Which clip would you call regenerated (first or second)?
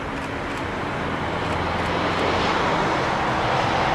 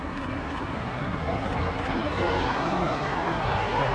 second